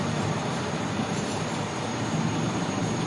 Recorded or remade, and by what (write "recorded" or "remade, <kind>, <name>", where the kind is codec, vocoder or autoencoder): remade, vocoder, BigVGAN v2